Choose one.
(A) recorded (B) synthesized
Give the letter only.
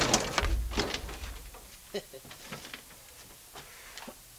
A